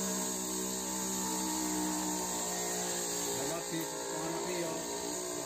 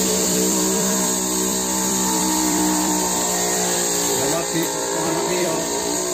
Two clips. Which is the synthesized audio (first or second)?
second